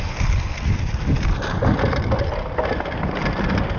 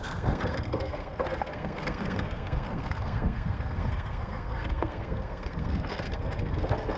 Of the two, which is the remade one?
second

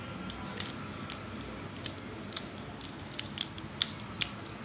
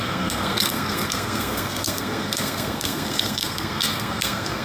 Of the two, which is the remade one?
second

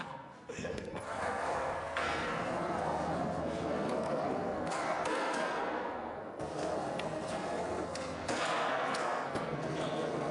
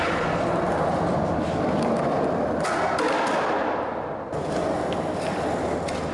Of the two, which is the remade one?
first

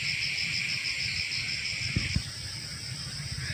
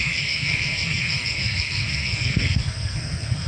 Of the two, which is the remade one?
second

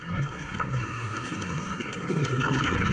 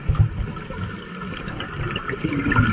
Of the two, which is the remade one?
first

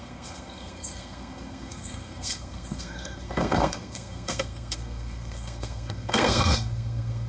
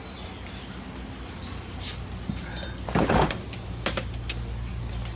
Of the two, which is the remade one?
first